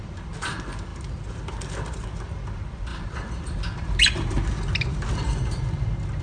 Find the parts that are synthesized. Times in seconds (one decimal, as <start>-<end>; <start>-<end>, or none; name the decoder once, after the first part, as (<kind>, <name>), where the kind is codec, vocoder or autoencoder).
none